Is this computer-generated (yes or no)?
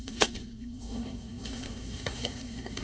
yes